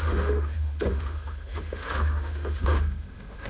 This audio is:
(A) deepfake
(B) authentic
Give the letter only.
A